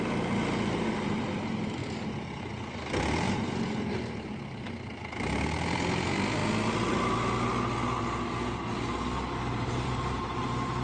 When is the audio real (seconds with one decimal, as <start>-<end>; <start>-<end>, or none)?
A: 0.0-1.8; 2.5-9.4